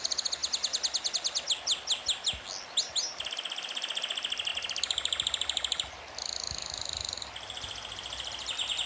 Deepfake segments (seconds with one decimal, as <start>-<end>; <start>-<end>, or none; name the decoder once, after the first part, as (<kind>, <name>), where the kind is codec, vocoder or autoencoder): none